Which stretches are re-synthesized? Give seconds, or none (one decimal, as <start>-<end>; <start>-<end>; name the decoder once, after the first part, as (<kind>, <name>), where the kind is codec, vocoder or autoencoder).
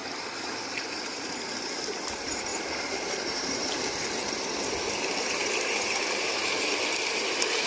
0.0-0.7 (vocoder, BigVGAN v2); 2.5-4.5